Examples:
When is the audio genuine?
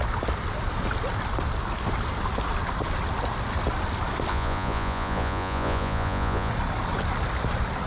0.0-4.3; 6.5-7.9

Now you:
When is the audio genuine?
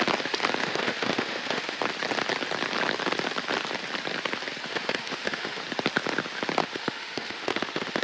0.0-0.6; 1.8-4.7; 5.6-6.6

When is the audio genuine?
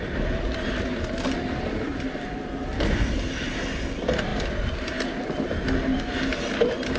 0.0-7.0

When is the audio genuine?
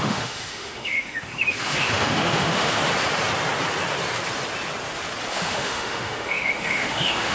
2.8-5.3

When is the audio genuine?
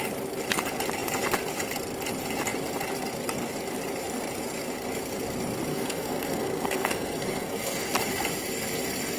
0.0-5.7; 7.9-9.2